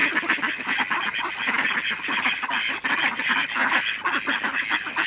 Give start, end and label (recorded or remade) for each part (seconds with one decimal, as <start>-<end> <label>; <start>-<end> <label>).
0.0-5.1 recorded